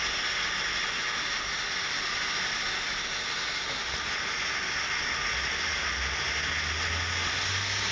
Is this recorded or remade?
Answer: recorded